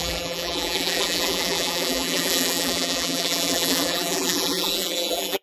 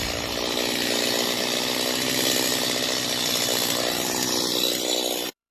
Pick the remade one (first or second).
first